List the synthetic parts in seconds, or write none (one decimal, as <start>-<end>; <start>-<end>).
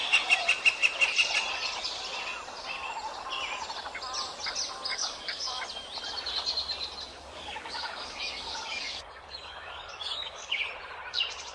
4.9-5.6; 7.1-10.6